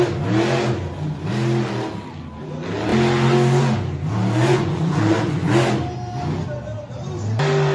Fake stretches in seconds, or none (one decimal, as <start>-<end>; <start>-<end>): 4.5-5.5